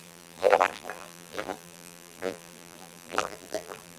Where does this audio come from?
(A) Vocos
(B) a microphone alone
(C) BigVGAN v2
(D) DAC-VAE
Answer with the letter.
C